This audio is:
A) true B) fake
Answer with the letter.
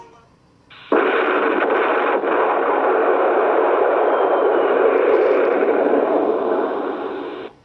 B